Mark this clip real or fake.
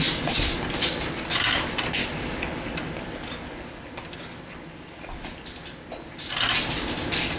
real